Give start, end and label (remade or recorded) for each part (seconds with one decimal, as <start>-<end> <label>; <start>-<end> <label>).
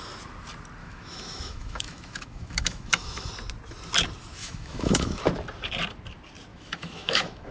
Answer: 0.0-0.8 recorded; 0.8-3.3 remade; 3.3-4.4 recorded; 4.4-5.2 remade; 5.2-6.5 recorded; 6.5-7.5 remade